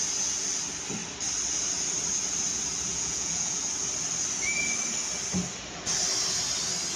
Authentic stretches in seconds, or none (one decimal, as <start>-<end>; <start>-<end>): 0.0-2.9; 3.6-7.0